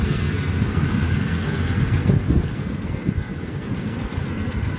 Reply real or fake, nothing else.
fake